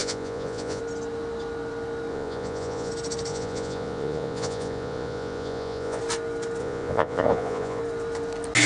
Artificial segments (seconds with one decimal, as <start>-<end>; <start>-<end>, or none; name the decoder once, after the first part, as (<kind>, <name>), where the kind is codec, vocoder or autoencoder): 0.0-0.8 (vocoder, Vocos); 2.1-2.9; 3.3-6.0; 6.6-7.8